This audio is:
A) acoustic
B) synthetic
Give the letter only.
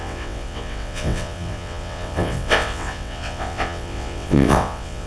B